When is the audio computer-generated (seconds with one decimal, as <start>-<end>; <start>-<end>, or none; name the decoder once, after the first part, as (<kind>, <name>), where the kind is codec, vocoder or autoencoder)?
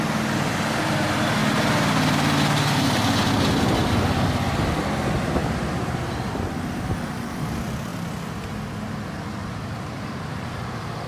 5.4-6.3 (vocoder, BigVGAN v2); 7.9-8.5; 9.4-11.1